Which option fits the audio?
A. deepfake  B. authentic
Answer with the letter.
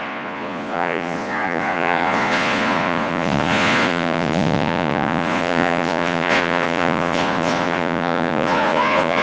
A